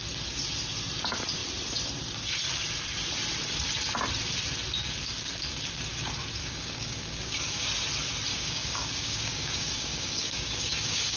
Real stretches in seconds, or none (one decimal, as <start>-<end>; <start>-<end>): 0.0-6.4; 7.6-8.3